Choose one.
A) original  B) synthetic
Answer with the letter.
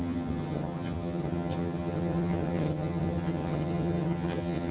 B